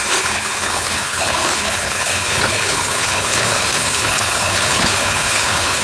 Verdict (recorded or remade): remade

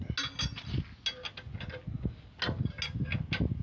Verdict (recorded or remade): recorded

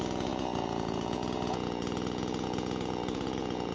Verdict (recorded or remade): remade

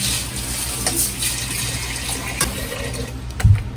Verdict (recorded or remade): recorded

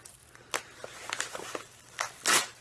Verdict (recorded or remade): recorded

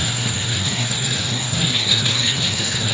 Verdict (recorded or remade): remade